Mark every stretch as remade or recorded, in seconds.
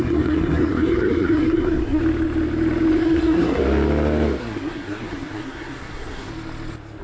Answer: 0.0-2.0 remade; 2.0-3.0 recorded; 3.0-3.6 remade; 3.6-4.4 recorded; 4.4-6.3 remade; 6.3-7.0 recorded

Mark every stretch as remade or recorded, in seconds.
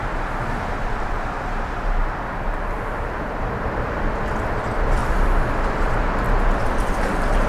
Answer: 0.0-5.0 recorded; 5.0-6.0 remade; 6.0-7.5 recorded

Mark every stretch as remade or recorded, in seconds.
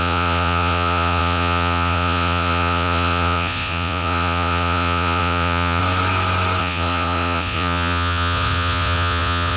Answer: 0.0-5.8 remade; 5.8-6.6 recorded; 6.6-9.6 remade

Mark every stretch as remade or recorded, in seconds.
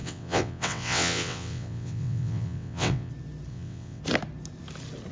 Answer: 0.0-3.1 remade; 3.1-3.5 recorded; 3.5-4.0 remade; 4.0-5.1 recorded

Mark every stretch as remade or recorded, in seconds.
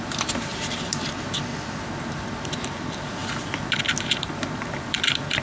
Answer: 0.0-1.5 remade; 1.5-2.0 recorded; 2.0-3.2 remade; 3.2-4.0 recorded; 4.0-5.4 remade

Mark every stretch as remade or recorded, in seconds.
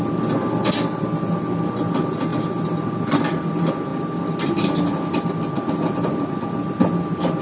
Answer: 0.0-7.4 recorded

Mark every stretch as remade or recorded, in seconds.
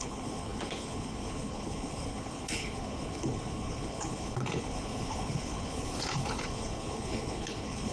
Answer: 0.0-7.9 remade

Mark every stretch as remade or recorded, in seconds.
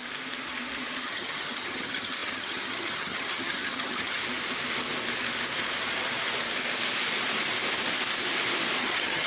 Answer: 0.0-1.0 recorded; 1.0-4.2 remade; 4.2-8.8 recorded; 8.8-9.3 remade